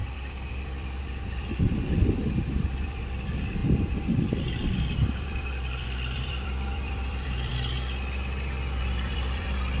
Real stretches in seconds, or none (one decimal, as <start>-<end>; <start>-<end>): 7.5-8.8